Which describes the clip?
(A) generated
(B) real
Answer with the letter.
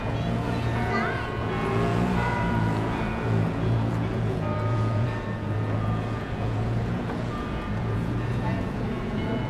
A